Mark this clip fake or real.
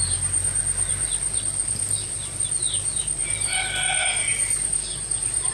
real